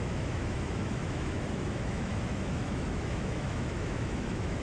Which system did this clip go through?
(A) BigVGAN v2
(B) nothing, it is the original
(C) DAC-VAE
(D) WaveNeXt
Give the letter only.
C